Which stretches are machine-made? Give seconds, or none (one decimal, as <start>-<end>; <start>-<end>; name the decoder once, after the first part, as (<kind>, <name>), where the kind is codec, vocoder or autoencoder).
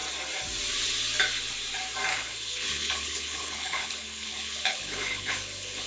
2.1-5.9 (codec, HILCodec)